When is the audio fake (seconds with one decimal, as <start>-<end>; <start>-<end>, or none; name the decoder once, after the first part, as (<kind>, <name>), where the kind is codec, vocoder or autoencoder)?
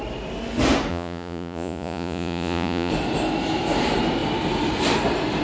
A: 0.9-2.9 (vocoder, Vocos)